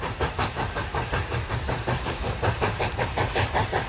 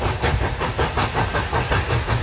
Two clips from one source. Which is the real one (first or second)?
second